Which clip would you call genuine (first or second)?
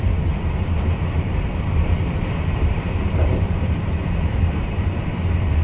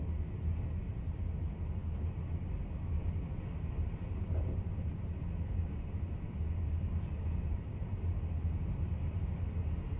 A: second